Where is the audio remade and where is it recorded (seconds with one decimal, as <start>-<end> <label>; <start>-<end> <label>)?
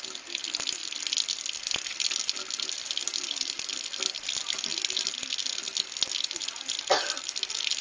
0.0-7.8 recorded